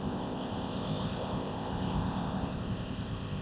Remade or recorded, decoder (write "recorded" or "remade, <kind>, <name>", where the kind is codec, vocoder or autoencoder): remade, codec, ZipCodec